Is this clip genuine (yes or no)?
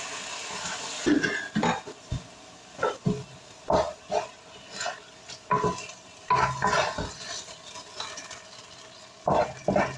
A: yes